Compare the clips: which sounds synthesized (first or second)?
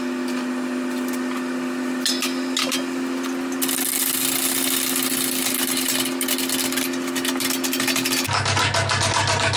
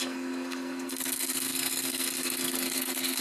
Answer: second